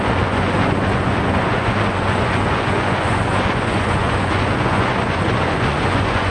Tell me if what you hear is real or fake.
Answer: fake